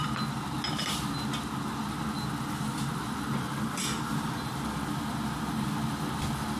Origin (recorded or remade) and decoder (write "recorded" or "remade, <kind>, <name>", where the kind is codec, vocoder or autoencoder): recorded